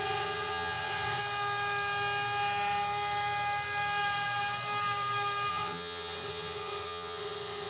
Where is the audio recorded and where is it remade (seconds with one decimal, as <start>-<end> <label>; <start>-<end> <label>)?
0.0-1.2 remade; 1.2-5.5 recorded; 5.5-7.7 remade